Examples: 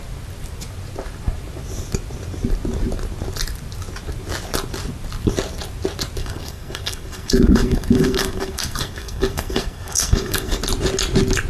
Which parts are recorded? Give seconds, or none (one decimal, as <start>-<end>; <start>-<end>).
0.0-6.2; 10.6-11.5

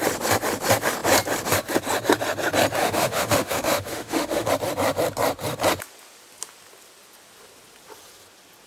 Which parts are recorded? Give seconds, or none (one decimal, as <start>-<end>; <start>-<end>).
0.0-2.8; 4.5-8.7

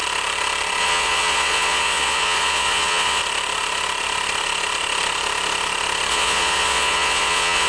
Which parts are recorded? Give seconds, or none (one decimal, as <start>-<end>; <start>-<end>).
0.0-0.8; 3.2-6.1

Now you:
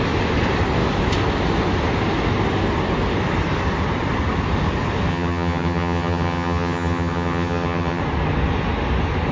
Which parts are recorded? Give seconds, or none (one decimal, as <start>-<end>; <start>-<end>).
0.0-5.1; 8.0-9.3

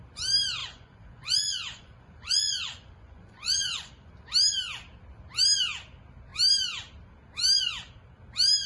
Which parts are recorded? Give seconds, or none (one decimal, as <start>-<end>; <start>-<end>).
0.0-0.6; 4.1-8.7